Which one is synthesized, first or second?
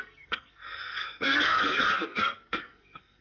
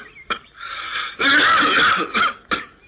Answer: first